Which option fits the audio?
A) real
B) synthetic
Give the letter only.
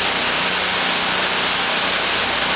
A